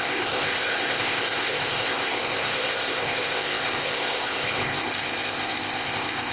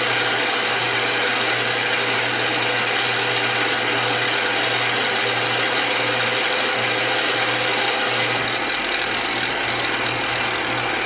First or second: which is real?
second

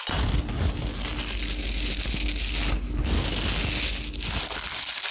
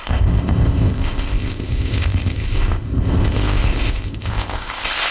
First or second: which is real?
first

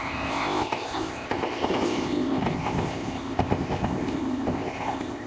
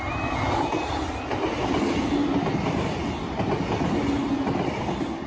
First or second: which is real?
second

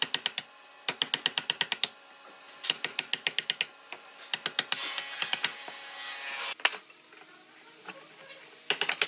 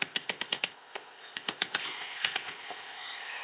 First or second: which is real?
first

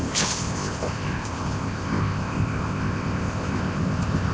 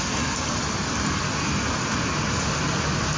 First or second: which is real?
second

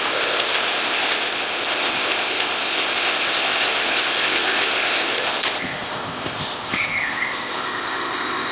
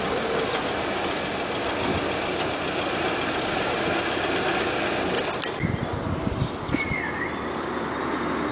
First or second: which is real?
second